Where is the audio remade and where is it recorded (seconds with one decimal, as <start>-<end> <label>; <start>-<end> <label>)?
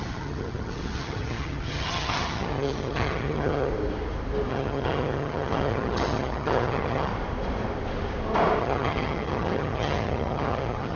0.0-3.7 remade; 3.7-4.5 recorded; 4.5-7.1 remade; 7.1-8.6 recorded; 8.6-11.0 remade